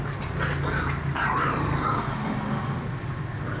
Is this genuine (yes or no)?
yes